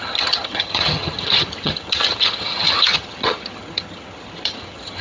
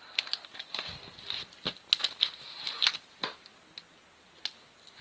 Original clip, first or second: second